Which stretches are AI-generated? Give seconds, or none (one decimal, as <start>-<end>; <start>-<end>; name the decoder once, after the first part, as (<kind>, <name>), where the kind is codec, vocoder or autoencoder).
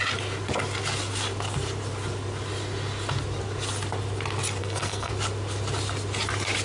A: 4.6-5.1 (codec, SNAC)